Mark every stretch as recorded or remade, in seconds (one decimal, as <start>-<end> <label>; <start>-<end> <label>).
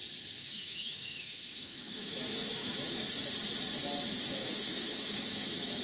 0.0-0.4 recorded; 0.4-2.2 remade; 2.2-2.6 recorded; 2.6-3.3 remade; 3.3-4.4 recorded; 4.4-5.8 remade